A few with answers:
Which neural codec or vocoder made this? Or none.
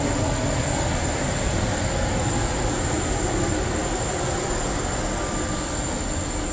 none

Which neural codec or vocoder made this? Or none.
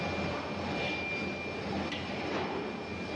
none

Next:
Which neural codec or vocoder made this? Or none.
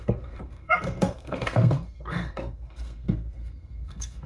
codec, SNAC